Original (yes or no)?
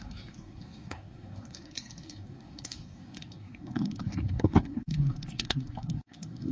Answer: no